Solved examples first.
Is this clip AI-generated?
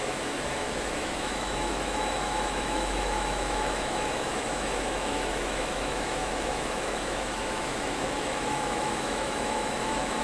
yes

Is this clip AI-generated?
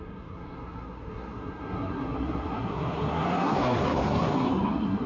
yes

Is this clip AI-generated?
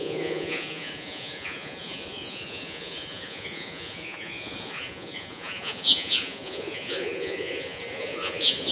yes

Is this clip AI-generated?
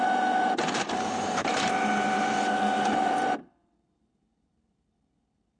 yes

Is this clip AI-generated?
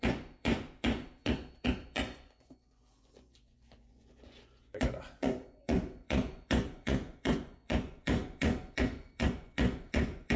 yes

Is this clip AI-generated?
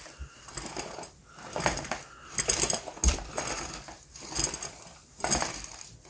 no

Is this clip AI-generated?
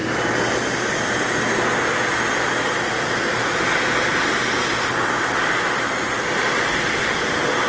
no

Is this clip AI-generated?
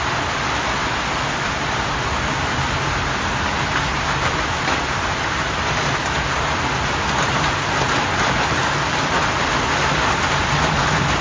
no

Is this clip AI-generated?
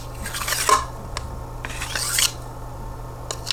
no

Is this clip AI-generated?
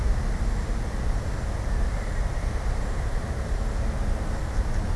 no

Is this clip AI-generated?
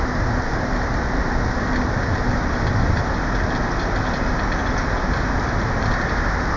no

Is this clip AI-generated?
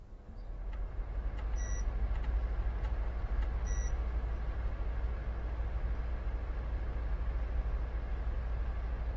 no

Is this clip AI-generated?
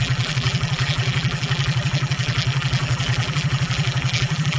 yes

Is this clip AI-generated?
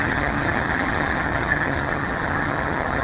yes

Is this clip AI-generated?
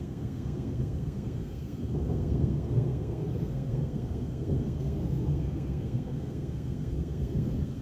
yes